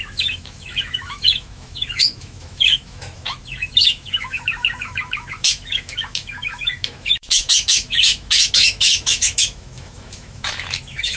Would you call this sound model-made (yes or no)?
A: yes